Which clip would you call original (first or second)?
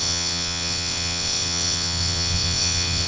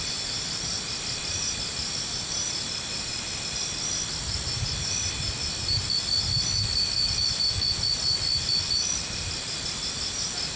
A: second